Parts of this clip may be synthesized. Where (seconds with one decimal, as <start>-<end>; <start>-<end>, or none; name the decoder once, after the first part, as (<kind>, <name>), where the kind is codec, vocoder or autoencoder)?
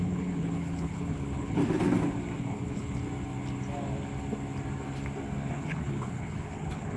0.0-1.6 (codec, HILCodec); 2.4-3.0; 5.5-7.0